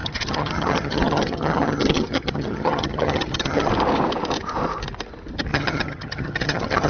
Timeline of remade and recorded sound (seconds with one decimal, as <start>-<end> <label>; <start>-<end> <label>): 0.0-3.7 remade; 3.7-5.5 recorded; 5.5-6.9 remade